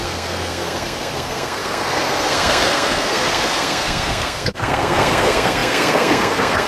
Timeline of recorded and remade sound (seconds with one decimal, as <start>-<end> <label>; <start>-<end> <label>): 0.0-6.7 remade